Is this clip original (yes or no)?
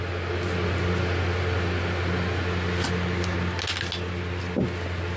yes